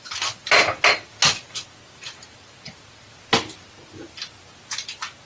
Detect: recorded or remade recorded